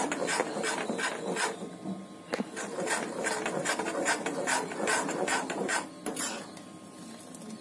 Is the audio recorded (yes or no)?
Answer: yes